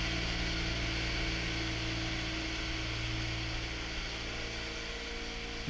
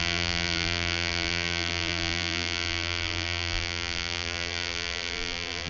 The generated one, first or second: second